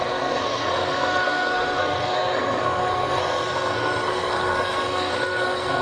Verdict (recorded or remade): remade